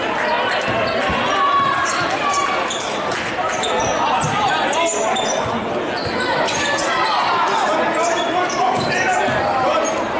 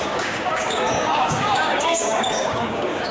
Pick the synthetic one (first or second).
second